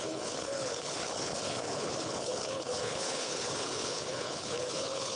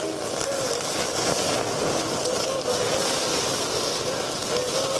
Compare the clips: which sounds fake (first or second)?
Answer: first